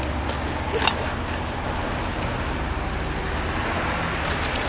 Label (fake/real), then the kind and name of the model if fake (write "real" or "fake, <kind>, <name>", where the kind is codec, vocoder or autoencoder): real